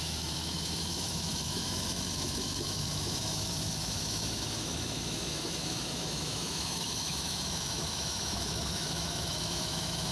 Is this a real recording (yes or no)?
no